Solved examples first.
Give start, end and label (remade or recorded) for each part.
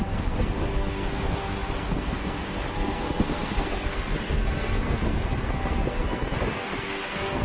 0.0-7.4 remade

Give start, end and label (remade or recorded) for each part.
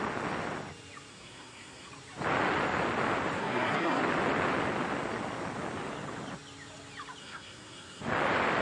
0.0-1.1 recorded; 1.1-1.9 remade; 1.9-3.4 recorded; 3.4-4.0 remade; 4.0-7.2 recorded; 7.2-8.0 remade; 8.0-8.6 recorded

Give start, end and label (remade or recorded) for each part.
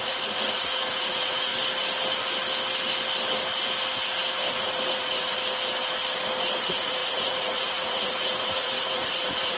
0.0-1.5 remade; 1.5-4.5 recorded; 4.5-5.3 remade; 5.3-6.6 recorded; 6.6-9.6 remade